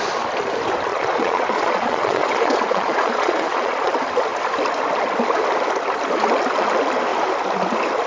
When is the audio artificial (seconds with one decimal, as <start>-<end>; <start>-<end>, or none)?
0.9-3.9